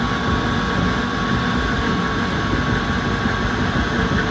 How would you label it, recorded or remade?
recorded